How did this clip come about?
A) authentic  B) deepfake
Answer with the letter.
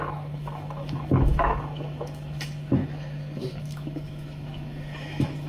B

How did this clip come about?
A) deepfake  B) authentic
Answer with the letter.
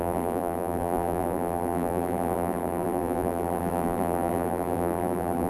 A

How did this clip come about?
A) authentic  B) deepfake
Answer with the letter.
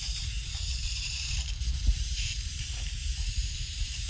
B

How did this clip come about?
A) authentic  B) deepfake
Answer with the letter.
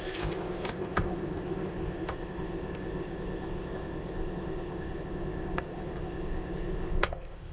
B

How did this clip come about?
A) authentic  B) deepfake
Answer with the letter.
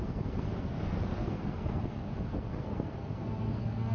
B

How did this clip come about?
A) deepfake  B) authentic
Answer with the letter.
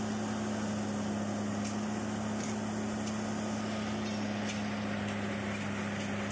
B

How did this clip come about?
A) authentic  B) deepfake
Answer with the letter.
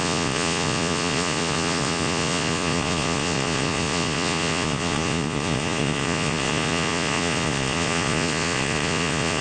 B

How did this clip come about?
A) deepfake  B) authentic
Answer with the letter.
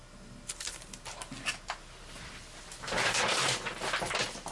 B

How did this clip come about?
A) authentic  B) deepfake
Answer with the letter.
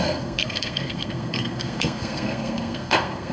B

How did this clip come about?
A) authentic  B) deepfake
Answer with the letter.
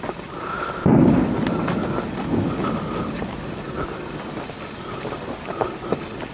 A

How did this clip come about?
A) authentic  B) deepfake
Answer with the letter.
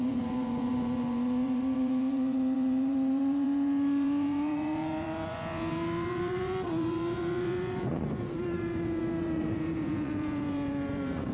B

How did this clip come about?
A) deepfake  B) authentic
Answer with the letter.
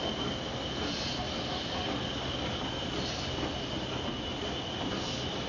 B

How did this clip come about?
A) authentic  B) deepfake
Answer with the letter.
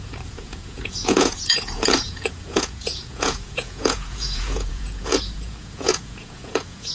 B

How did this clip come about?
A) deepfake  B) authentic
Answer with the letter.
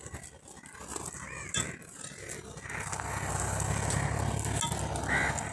B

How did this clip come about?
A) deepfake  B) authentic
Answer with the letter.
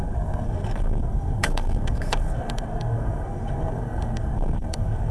A